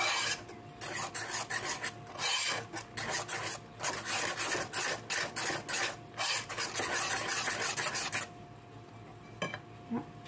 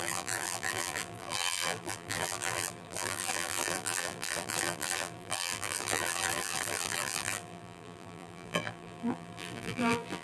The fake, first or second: second